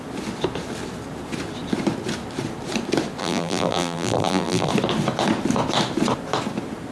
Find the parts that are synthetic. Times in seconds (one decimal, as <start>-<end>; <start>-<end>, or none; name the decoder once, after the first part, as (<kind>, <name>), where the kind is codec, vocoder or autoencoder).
3.2-4.7 (vocoder, BigVGAN v2)